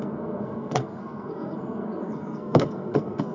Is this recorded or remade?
remade